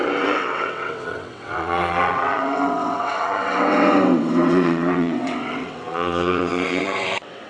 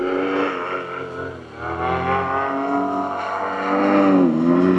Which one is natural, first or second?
second